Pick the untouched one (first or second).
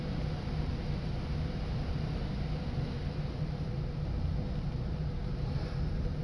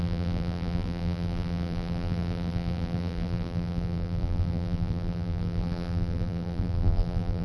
first